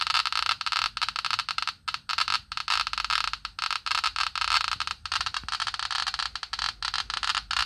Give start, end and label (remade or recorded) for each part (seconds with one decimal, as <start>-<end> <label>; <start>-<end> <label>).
0.0-7.7 recorded